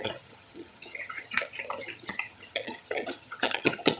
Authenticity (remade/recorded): remade